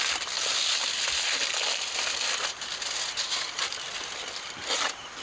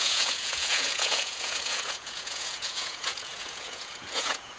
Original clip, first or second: first